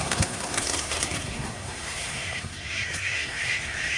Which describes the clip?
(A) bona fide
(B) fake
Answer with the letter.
B